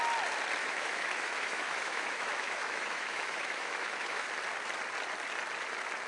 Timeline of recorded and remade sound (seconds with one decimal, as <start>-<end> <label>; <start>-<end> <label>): 0.0-0.6 recorded; 0.6-4.3 remade; 4.3-6.1 recorded